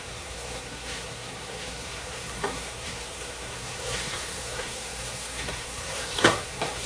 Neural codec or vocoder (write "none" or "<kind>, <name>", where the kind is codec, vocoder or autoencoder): codec, SNAC